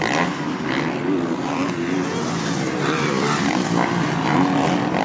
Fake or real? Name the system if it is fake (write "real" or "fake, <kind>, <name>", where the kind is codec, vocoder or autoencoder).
real